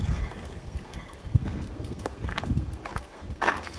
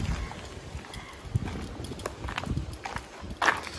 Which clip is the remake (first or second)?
first